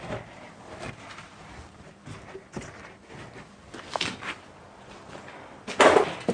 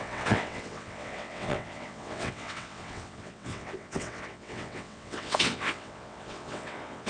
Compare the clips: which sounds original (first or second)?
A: first